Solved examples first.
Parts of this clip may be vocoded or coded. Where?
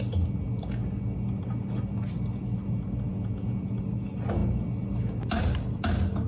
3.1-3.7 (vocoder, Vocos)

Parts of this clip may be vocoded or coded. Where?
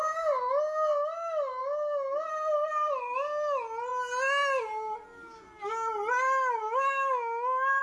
6.6-7.8 (autoencoder, DAC-VAE)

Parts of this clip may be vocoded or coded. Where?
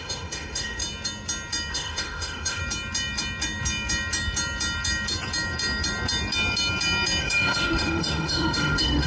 0.0-0.8 (autoencoder, DAC-VAE); 1.7-2.6; 7.2-9.1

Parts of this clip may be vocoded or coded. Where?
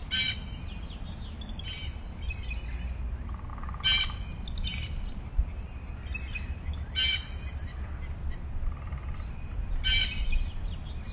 none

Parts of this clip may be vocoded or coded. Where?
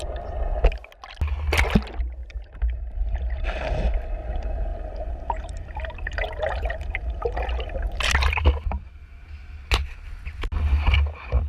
2.2-3.2 (vocoder, BigVGAN v2); 4.7-8.4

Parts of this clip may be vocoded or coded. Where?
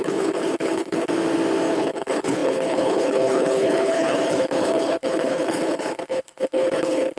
0.0-1.1 (codec, HILCodec); 1.7-7.2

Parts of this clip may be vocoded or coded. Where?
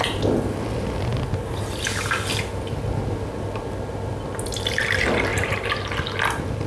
5.3-5.8 (vocoder, BigVGAN v2)